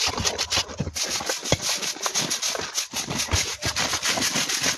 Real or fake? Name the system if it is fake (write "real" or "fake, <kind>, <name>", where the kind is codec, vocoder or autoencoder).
real